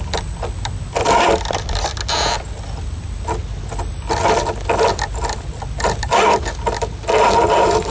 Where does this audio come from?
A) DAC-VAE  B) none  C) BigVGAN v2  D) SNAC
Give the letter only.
B